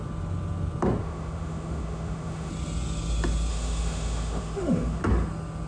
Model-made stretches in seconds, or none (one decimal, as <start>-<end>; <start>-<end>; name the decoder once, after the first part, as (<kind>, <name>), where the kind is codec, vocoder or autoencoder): 1.0-2.5 (autoencoder, DAC-VAE); 3.5-5.0